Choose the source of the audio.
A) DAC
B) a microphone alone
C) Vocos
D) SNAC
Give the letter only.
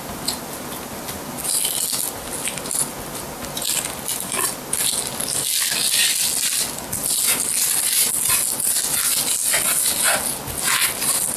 B